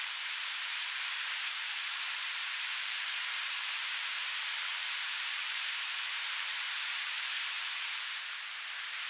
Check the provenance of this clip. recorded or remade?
remade